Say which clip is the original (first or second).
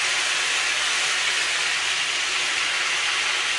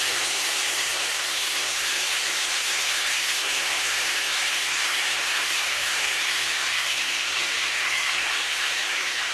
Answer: first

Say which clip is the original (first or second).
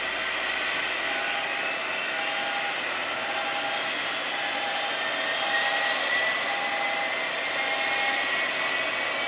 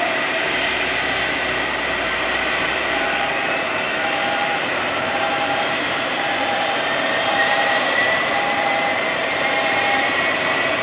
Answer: first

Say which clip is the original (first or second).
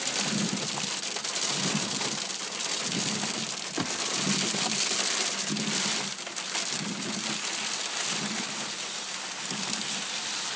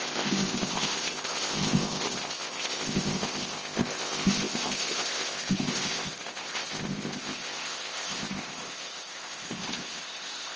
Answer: first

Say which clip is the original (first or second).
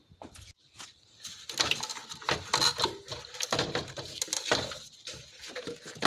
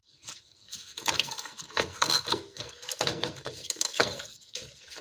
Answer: first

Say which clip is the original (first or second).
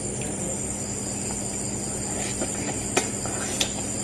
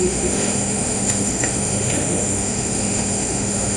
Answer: first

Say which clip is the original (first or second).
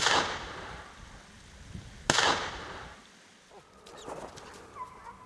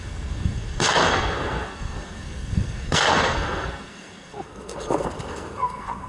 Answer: first